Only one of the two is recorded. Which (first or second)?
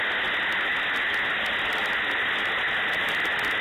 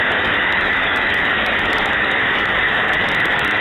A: first